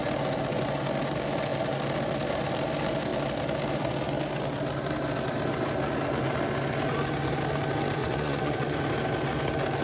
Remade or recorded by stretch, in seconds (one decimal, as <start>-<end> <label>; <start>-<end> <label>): 0.0-8.0 recorded; 8.0-8.8 remade; 8.8-9.8 recorded